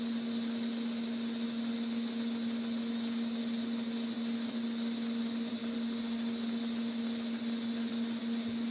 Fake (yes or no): no